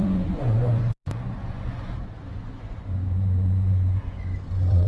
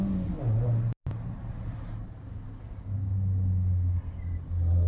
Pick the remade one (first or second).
first